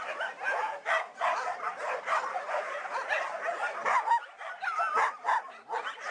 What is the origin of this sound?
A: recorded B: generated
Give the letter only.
A